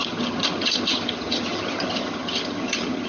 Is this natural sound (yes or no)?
no